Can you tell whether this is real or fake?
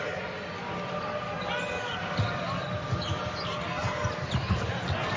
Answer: real